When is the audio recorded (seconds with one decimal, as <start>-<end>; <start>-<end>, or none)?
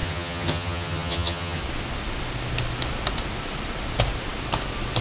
1.6-5.0